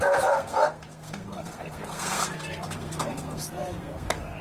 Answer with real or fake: fake